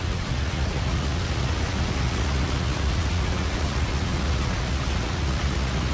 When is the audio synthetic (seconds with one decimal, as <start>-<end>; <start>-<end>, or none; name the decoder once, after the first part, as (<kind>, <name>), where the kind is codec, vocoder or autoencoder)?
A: 0.0-5.9 (vocoder, Vocos)